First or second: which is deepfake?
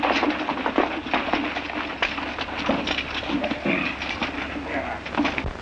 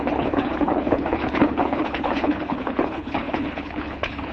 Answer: second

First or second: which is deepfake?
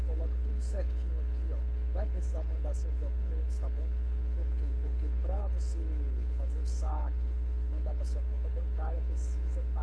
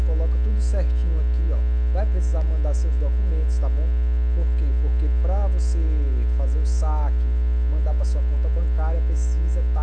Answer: first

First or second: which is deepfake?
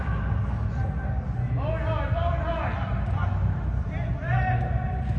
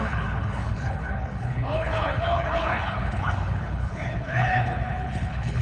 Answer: second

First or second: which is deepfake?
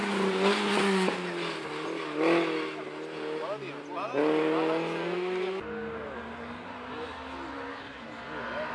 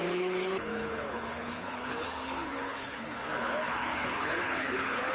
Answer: second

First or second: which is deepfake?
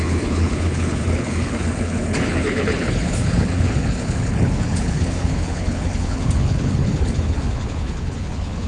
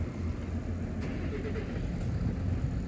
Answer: first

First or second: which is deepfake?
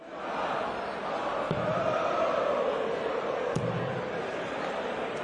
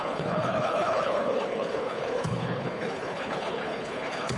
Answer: second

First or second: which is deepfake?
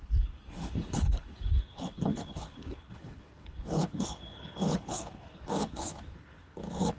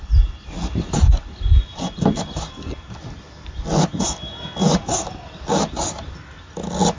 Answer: first